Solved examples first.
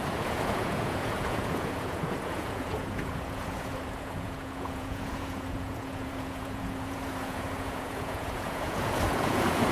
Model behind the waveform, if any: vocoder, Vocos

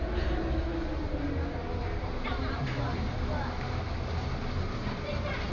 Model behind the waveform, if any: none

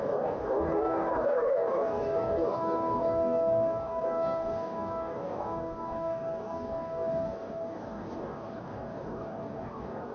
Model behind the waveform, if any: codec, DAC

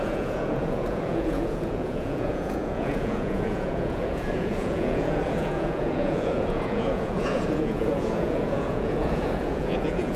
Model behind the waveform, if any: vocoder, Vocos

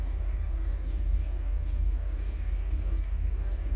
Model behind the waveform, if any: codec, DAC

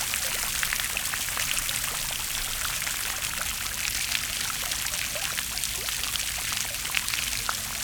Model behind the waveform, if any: none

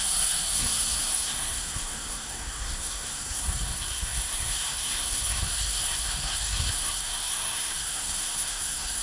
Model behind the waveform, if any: codec, SNAC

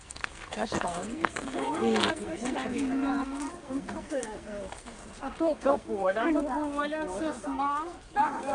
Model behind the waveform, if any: codec, SNAC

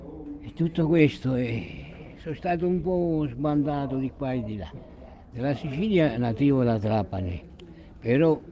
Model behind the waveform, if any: none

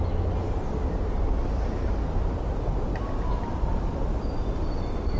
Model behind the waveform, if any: none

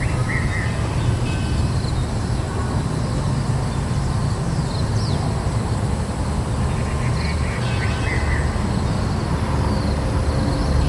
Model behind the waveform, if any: none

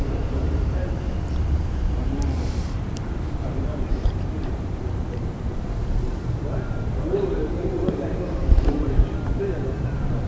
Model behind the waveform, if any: vocoder, BigVGAN v2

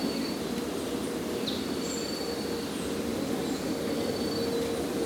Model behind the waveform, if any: none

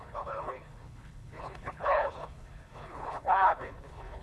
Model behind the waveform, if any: codec, HILCodec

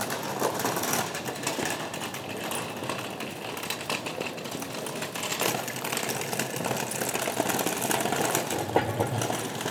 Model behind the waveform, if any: none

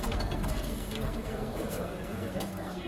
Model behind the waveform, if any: codec, SNAC